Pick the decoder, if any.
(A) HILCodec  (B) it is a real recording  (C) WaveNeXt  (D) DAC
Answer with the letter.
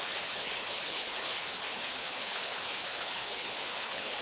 A